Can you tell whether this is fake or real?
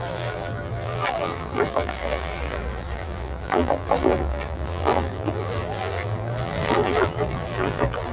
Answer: fake